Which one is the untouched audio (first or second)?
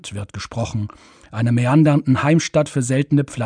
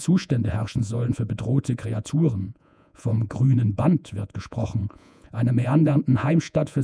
first